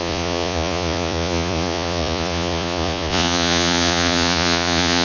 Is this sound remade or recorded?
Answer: remade